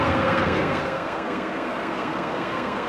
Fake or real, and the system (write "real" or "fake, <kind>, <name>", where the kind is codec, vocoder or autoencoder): fake, codec, SNAC